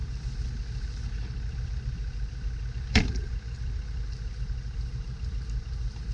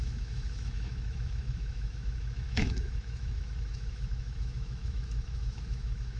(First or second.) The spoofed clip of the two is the second